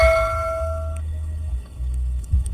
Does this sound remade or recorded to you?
remade